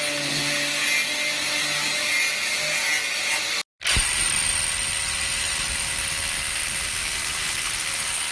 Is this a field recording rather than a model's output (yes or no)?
yes